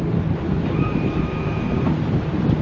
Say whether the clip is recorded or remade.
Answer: remade